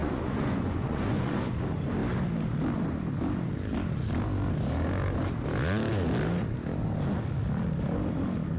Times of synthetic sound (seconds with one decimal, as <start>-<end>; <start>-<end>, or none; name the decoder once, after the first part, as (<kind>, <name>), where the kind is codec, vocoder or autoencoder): 0.0-1.4 (vocoder, Vocos)